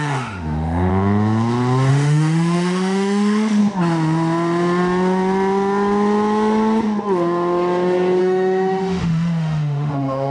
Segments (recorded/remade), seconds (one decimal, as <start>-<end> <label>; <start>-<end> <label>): 0.0-0.9 remade; 0.9-1.9 recorded; 1.9-3.6 remade; 3.6-8.2 recorded; 8.2-10.3 remade